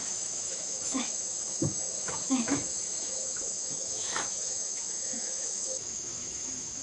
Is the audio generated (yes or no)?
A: yes